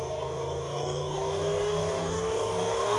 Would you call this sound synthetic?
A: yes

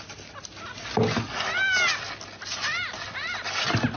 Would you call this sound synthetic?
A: no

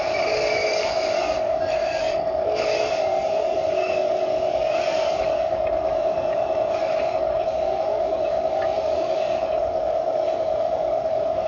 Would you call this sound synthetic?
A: yes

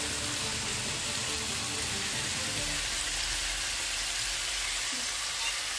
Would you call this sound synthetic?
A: no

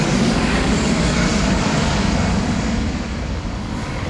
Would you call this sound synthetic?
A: yes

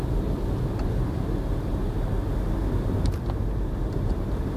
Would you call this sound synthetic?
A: no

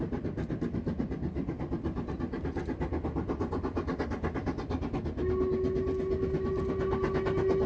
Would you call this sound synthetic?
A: no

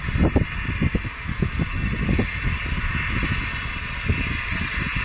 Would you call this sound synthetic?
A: no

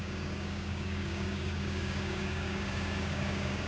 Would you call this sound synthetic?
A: yes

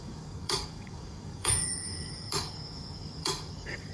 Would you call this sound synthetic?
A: yes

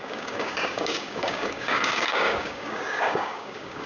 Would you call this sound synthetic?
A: yes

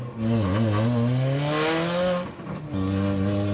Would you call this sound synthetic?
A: no